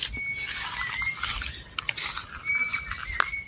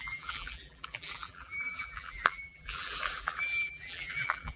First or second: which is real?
first